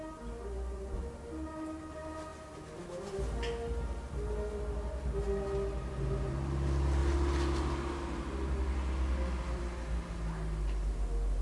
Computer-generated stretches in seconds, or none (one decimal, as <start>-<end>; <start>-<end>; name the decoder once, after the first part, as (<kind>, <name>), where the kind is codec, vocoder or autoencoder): none